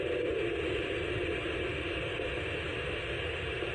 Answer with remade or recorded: recorded